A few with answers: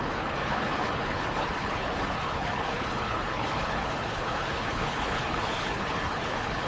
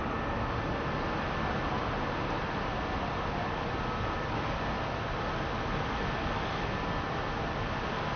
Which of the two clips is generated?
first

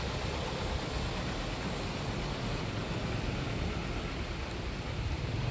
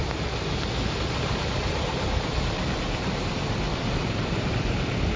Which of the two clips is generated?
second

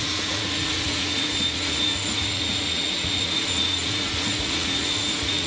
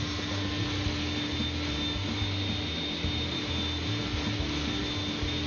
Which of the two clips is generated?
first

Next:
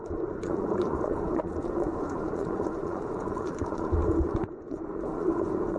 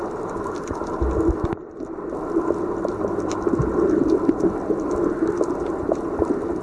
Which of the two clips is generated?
first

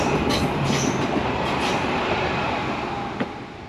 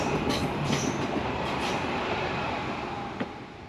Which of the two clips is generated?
second